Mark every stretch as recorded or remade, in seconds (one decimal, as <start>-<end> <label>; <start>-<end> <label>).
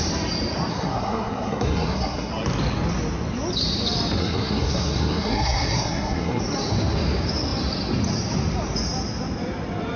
0.0-0.7 recorded; 0.7-2.3 remade; 2.3-4.2 recorded; 4.2-6.4 remade; 6.4-10.0 recorded